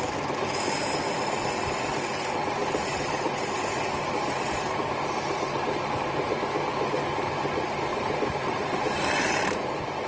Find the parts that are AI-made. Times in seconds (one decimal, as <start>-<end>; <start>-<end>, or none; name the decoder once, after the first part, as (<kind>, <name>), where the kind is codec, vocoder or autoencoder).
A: 2.6-6.4 (vocoder, BigVGAN v2); 7.9-9.7